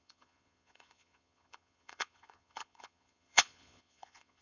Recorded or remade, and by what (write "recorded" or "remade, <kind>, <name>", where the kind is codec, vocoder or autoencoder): remade, vocoder, Vocos